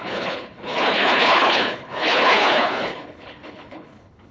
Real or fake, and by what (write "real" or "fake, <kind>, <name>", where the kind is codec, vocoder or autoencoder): fake, codec, HILCodec